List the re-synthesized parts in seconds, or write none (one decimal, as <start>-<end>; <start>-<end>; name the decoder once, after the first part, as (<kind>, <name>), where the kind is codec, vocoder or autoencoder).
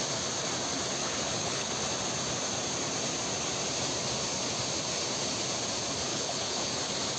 1.0-1.7 (codec, HILCodec); 6.1-6.7